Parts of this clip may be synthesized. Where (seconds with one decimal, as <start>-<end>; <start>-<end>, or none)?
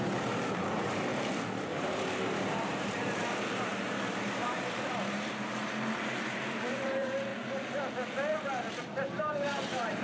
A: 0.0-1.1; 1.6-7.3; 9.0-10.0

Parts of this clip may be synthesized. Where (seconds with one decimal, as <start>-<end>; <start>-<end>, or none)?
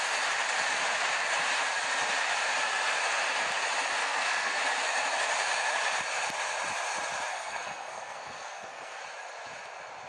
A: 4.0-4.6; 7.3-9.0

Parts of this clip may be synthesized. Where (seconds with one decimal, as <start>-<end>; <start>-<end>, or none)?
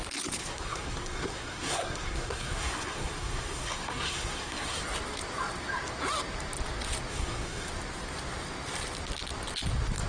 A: 0.4-4.8; 7.1-7.7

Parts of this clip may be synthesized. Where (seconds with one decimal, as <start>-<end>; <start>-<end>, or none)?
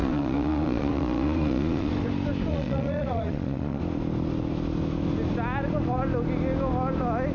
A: 0.0-1.9; 2.5-3.8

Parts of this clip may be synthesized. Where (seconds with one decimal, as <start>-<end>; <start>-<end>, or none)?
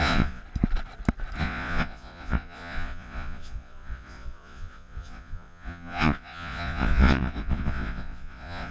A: 0.0-0.4; 1.4-8.7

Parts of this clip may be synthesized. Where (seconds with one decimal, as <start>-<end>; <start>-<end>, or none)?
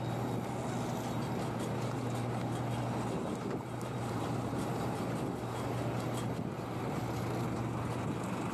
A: 3.2-4.7